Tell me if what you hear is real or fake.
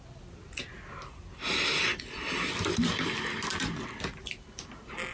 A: real